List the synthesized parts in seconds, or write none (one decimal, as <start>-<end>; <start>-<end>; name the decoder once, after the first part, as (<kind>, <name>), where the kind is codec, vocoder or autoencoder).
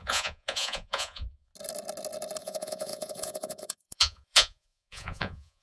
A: 0.0-1.5 (vocoder, Vocos); 2.4-5.6